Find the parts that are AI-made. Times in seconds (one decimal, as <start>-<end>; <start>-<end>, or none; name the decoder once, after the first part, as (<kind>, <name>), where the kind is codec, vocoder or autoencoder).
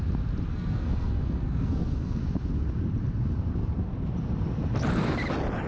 0.5-2.2 (codec, SNAC)